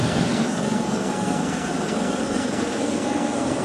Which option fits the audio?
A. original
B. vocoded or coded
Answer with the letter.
B